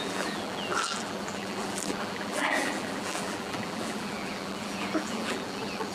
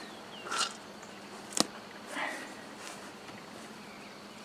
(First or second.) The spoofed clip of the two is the first